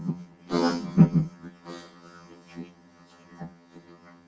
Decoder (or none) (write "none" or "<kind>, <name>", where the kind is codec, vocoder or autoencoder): vocoder, HiFi-GAN